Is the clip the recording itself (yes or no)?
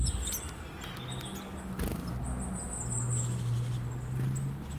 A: yes